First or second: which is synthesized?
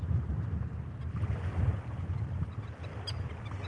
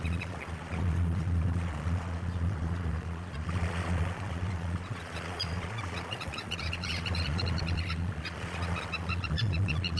second